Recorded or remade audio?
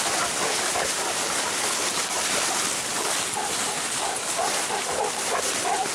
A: recorded